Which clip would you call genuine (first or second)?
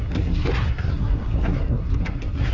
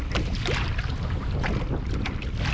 second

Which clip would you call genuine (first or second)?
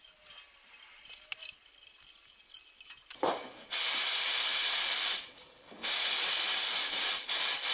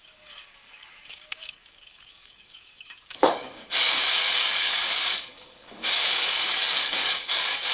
first